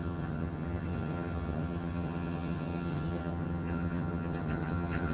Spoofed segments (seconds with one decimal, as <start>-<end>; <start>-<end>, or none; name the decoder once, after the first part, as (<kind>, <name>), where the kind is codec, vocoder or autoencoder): 0.0-5.1 (vocoder, HiFi-GAN)

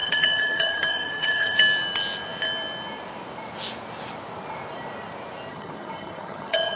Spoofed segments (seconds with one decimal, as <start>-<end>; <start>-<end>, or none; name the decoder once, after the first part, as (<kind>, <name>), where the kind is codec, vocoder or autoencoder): 0.0-1.6 (vocoder, HiFi-GAN); 5.5-6.8

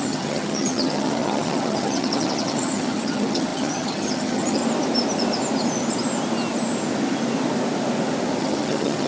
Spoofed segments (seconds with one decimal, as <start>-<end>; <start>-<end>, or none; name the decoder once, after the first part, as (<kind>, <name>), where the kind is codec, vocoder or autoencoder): 0.0-4.6 (vocoder, HiFi-GAN); 8.4-9.1

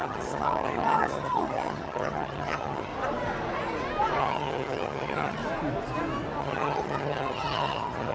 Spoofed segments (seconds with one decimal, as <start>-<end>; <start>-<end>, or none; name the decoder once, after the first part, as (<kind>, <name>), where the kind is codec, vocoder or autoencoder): 0.0-2.9 (vocoder, HiFi-GAN); 4.2-5.4; 6.4-8.1

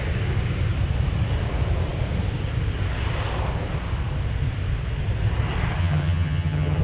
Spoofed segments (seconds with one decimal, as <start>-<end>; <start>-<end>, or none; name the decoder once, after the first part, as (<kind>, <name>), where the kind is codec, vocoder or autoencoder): 5.8-6.8 (vocoder, HiFi-GAN)